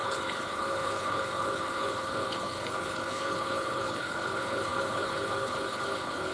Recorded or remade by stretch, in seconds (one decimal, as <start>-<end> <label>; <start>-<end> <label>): 0.0-6.3 remade

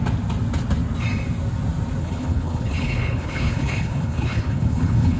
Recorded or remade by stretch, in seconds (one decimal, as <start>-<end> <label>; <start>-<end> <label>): 0.0-2.0 recorded; 2.0-5.2 remade

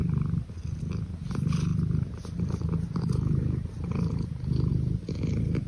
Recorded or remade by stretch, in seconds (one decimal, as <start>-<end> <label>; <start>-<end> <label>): 0.0-5.7 recorded

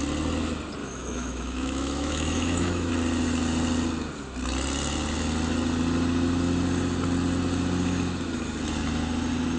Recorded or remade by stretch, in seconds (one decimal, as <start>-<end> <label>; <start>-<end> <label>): 0.0-0.8 recorded; 0.8-2.9 remade; 2.9-9.6 recorded

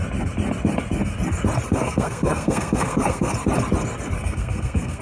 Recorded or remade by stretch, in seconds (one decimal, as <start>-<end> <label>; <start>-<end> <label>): 0.0-1.7 recorded; 1.7-3.3 remade; 3.3-4.2 recorded; 4.2-5.0 remade

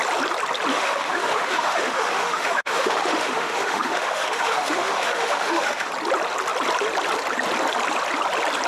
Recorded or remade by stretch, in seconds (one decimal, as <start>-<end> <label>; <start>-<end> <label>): 0.0-0.7 recorded; 0.7-5.9 remade; 5.9-8.7 recorded